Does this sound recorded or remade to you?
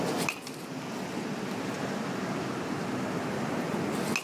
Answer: recorded